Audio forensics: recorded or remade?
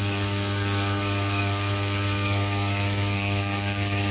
remade